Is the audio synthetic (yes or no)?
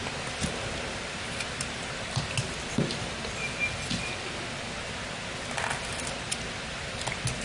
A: no